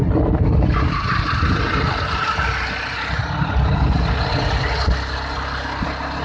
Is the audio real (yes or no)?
yes